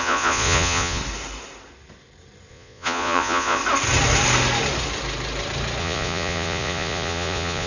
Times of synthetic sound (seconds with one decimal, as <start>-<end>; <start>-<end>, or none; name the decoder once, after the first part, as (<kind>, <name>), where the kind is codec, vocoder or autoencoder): 0.0-1.0 (vocoder, Vocos); 2.5-3.6; 5.8-7.7